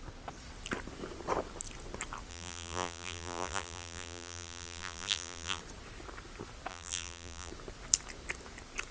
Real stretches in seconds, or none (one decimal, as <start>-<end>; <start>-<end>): 0.0-2.3; 5.6-6.7; 7.5-8.9